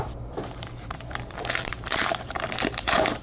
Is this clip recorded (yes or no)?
no